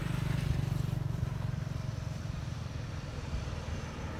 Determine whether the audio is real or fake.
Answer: fake